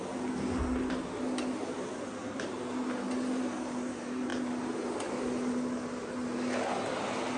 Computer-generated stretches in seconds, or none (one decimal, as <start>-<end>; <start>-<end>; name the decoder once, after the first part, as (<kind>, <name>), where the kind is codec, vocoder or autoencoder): none